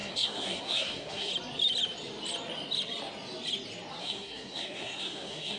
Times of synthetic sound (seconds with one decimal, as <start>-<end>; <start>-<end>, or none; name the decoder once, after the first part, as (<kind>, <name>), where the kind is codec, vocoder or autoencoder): 0.0-1.3 (codec, SNAC); 4.0-5.6